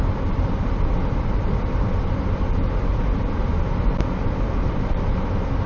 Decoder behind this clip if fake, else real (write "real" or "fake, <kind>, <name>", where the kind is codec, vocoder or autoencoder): real